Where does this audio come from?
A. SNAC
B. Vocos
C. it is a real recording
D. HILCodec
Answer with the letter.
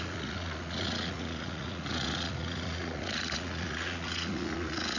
B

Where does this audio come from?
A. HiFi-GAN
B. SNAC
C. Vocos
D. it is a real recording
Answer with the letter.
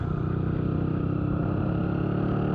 D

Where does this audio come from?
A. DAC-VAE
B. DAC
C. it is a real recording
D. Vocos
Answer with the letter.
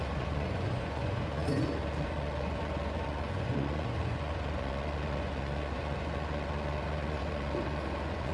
D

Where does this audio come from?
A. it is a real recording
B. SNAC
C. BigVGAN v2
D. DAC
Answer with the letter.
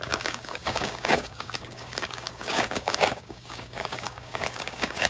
D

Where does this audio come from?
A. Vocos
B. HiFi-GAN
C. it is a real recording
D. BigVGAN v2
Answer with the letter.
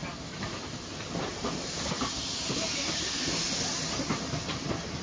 C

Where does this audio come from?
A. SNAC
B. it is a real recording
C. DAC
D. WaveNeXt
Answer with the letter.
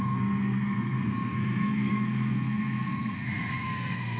A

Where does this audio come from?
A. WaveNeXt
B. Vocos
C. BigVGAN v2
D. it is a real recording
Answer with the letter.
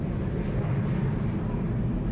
D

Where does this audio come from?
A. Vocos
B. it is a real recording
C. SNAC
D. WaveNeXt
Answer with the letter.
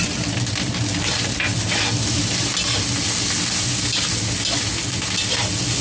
B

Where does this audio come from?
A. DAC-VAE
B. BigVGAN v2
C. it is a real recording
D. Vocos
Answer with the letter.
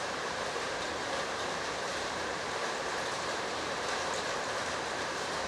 B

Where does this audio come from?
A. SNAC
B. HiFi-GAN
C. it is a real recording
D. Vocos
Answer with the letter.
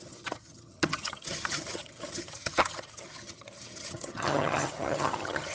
B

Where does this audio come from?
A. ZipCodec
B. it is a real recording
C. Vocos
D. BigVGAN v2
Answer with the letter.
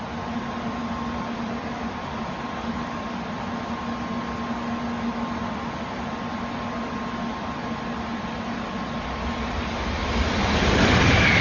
B